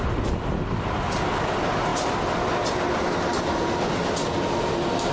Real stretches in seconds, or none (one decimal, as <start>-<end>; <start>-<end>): 0.0-5.1